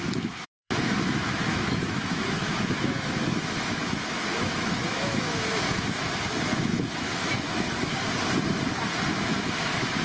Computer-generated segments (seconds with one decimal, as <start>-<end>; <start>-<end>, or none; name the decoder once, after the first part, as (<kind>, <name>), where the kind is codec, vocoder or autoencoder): 0.0-7.9 (autoencoder, DAC-VAE); 9.2-10.0